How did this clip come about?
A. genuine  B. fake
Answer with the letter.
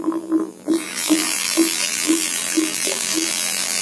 B